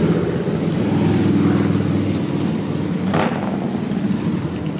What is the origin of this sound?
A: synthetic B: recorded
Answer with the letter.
B